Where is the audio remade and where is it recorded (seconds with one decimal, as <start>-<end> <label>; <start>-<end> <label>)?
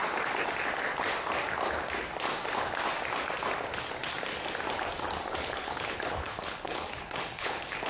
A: 0.0-5.3 recorded; 5.3-7.9 remade